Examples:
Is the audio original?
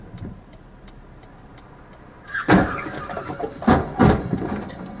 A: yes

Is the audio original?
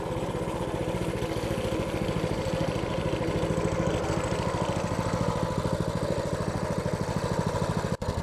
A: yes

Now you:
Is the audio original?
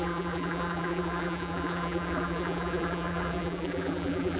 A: no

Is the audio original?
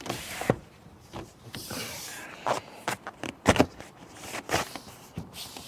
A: no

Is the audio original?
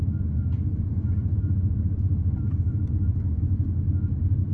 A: no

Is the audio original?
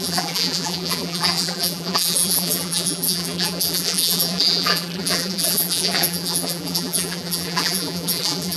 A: no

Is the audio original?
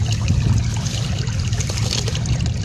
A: no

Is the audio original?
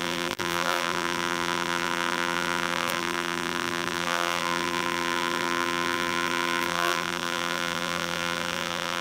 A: no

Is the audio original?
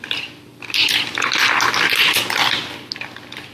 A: yes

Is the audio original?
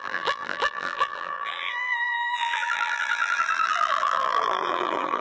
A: no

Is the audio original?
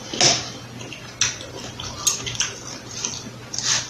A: yes